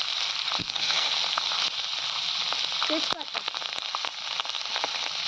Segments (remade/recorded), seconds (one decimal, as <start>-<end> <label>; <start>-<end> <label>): 0.0-0.6 recorded; 0.6-1.1 remade; 1.1-5.3 recorded

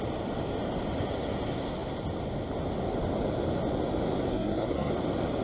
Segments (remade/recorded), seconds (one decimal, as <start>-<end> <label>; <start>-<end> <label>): 0.0-4.3 recorded; 4.3-4.9 remade; 4.9-5.4 recorded

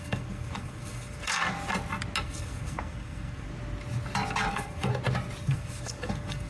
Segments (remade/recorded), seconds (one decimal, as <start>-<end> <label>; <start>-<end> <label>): 0.0-1.4 remade; 1.4-2.2 recorded; 2.2-3.5 remade; 3.5-4.5 recorded; 4.5-4.9 remade; 4.9-5.4 recorded; 5.4-6.5 remade

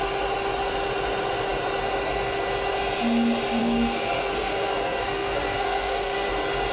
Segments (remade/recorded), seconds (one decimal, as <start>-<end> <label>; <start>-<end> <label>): 0.0-3.6 recorded; 3.6-6.3 remade; 6.3-6.7 recorded

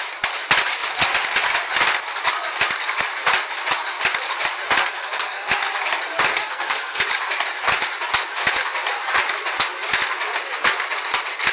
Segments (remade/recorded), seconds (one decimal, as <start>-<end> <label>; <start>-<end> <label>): 0.0-4.8 recorded; 4.8-5.5 remade; 5.5-6.3 recorded; 6.3-7.0 remade; 7.0-11.5 recorded